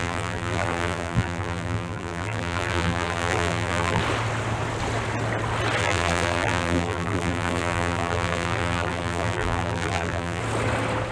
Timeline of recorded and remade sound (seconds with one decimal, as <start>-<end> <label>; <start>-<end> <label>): 0.0-4.0 remade; 4.0-5.8 recorded; 5.8-10.4 remade; 10.4-11.1 recorded